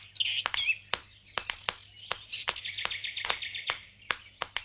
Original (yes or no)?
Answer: yes